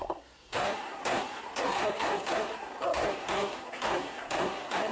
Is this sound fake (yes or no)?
yes